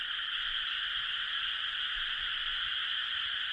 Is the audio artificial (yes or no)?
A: no